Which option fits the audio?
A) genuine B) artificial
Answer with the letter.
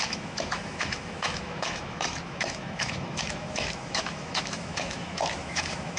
B